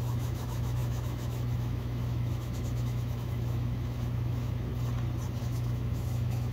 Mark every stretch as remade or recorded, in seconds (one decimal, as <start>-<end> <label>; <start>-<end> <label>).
0.0-4.7 remade; 4.7-5.4 recorded; 5.4-6.5 remade